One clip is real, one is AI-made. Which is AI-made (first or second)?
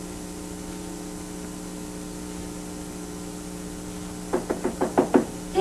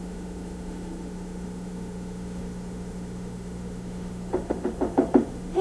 second